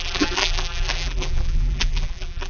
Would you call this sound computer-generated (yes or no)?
yes